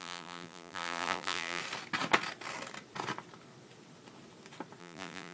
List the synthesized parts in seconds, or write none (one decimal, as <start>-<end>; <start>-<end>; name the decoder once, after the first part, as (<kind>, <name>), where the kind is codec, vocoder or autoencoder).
0.0-1.6 (vocoder, BigVGAN v2); 4.8-5.3